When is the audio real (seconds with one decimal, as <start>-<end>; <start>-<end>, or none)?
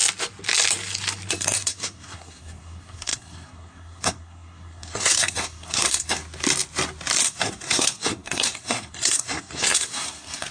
0.0-1.3; 6.2-7.2